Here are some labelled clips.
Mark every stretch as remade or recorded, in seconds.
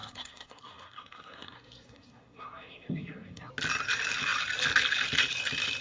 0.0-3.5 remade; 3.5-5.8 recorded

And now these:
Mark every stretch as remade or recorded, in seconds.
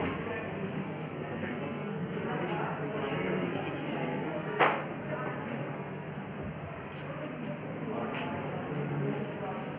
0.0-0.8 recorded; 0.8-2.2 remade; 2.2-3.0 recorded; 3.0-5.1 remade; 5.1-5.5 recorded; 5.5-6.1 remade; 6.1-9.8 recorded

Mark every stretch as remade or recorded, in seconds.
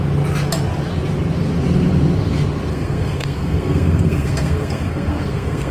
0.0-2.7 recorded; 2.7-5.7 remade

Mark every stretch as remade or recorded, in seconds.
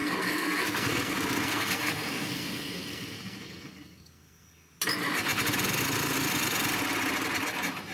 0.0-4.7 remade; 4.7-7.9 recorded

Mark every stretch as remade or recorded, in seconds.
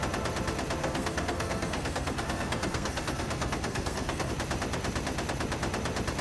0.0-0.8 recorded; 0.8-4.3 remade; 4.3-6.2 recorded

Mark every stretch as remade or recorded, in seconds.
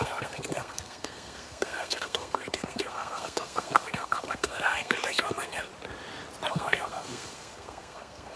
0.0-5.7 remade; 5.7-6.5 recorded; 6.5-8.4 remade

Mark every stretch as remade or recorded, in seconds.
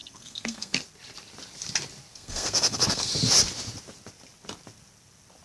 0.0-0.8 remade; 0.8-2.1 recorded; 2.1-3.1 remade; 3.1-5.4 recorded